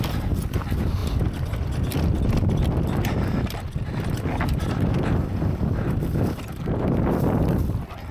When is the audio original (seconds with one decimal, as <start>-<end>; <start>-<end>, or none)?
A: 0.0-8.1